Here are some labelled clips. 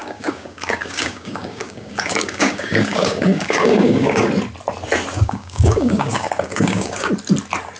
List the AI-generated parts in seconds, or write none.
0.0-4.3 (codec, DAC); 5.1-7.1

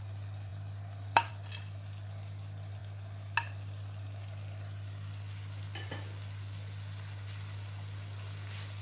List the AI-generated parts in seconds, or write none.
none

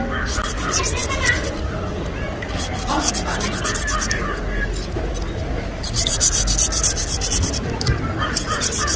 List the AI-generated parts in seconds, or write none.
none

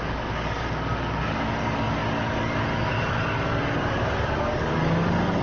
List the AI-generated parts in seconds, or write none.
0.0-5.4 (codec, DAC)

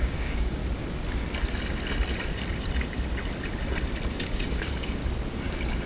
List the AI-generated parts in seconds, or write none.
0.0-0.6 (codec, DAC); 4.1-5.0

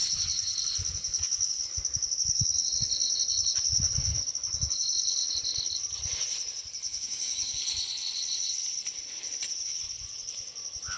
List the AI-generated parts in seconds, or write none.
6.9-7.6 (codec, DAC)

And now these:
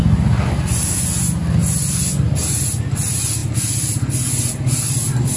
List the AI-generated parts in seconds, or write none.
none

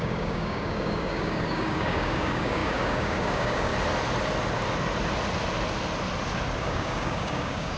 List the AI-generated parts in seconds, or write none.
0.0-3.7 (codec, DAC); 6.6-7.8